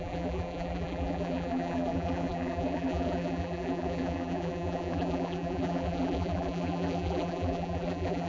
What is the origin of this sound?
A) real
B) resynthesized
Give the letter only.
B